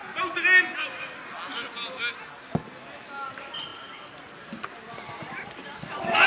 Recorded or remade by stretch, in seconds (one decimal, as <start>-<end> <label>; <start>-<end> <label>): 0.0-6.3 recorded

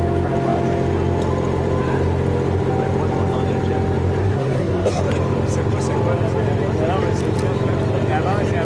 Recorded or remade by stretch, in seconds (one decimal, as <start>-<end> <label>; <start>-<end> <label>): 0.0-4.2 recorded; 4.2-5.0 remade; 5.0-8.6 recorded

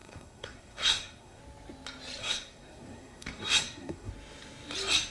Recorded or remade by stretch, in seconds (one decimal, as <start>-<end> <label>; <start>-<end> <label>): 0.0-1.4 remade; 1.4-2.2 recorded; 2.2-4.1 remade; 4.1-5.1 recorded

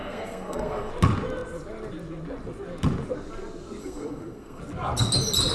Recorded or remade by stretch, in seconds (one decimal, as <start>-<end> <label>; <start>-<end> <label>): 0.0-0.9 remade; 0.9-3.8 recorded; 3.8-4.6 remade; 4.6-5.5 recorded